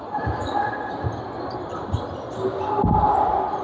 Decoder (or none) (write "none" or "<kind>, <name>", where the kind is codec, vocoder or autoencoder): none